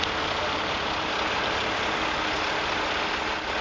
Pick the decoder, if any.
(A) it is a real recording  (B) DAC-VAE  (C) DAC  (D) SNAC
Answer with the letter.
A